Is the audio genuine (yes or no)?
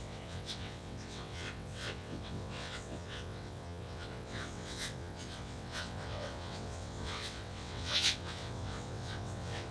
no